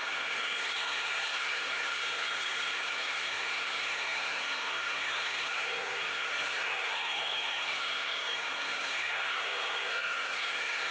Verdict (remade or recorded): remade